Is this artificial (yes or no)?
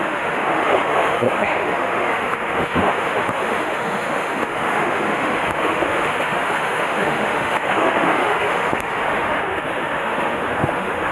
yes